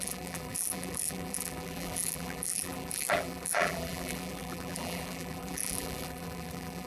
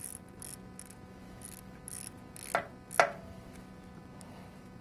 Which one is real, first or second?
second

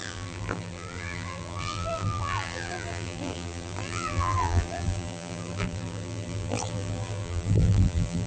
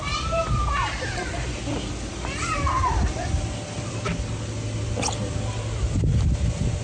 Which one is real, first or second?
second